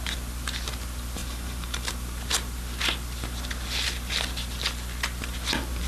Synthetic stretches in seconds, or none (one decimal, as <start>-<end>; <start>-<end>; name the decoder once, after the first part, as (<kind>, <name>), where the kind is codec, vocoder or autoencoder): 1.2-1.9 (vocoder, BigVGAN v2)